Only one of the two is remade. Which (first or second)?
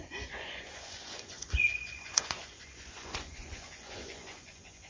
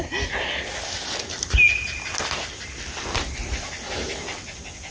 first